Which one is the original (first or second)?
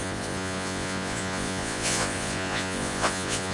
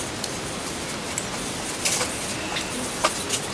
second